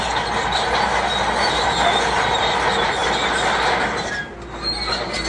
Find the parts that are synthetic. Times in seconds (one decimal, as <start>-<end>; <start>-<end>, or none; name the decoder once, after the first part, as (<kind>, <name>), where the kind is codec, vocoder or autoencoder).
none